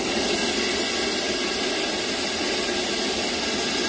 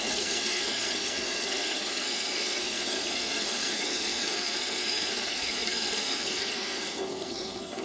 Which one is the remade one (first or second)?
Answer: second